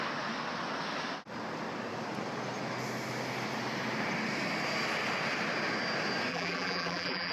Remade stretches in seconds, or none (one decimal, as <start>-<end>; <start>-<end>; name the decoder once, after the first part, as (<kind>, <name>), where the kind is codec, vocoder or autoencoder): 6.3-7.3 (vocoder, BigVGAN v2)